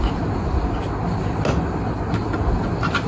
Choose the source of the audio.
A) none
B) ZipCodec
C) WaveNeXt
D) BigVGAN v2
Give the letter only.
A